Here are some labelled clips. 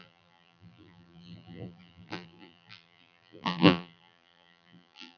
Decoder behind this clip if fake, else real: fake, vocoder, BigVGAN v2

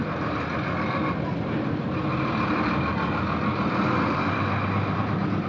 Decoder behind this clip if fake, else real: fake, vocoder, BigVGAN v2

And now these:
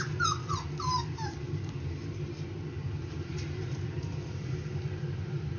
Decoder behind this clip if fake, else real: fake, vocoder, BigVGAN v2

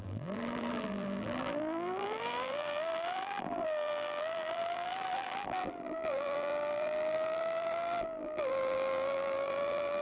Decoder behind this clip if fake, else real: fake, vocoder, BigVGAN v2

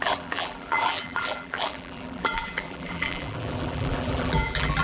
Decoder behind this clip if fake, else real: fake, vocoder, BigVGAN v2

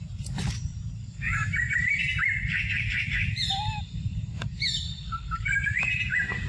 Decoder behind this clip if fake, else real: fake, vocoder, BigVGAN v2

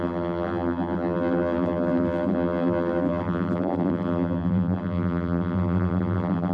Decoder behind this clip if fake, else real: fake, vocoder, BigVGAN v2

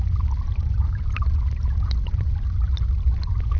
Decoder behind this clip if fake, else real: real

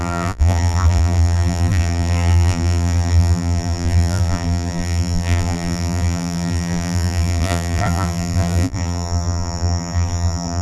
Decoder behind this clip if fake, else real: fake, vocoder, BigVGAN v2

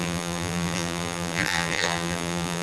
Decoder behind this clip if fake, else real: fake, vocoder, BigVGAN v2